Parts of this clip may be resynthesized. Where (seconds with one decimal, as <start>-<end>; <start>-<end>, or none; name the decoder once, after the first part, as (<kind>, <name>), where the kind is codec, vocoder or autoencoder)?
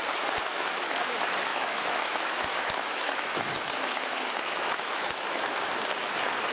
0.5-1.0 (autoencoder, DAC-VAE); 1.5-5.4